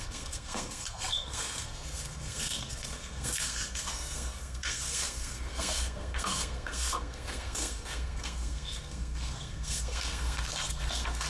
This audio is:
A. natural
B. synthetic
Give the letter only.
B